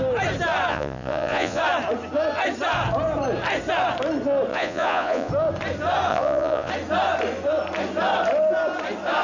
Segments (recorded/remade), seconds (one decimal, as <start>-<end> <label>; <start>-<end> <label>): 0.0-0.7 recorded; 0.7-1.6 remade; 1.6-4.5 recorded; 4.5-5.3 remade; 5.3-6.1 recorded; 6.1-6.7 remade; 6.7-9.2 recorded